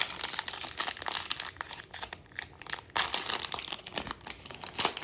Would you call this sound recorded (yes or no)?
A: yes